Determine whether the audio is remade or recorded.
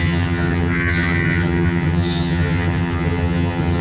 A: remade